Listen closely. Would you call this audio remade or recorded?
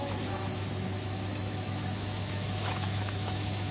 remade